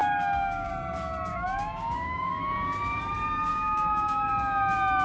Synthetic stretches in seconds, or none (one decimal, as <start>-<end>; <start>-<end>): 0.0-0.7; 1.3-3.0; 3.5-4.3